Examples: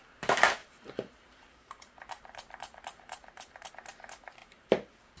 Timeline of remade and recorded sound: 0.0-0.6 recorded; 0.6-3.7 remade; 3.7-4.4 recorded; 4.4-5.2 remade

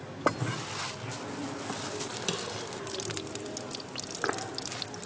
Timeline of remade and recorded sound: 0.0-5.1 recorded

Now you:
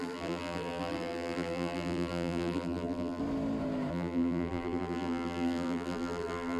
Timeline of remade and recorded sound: 0.0-3.2 remade; 3.2-3.9 recorded; 3.9-6.6 remade

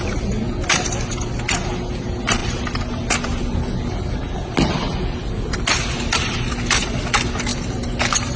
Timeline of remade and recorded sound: 0.0-8.4 recorded